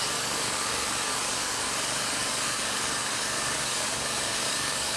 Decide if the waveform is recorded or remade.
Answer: remade